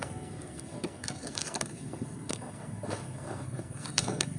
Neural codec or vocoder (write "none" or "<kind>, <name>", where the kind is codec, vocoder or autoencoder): codec, SNAC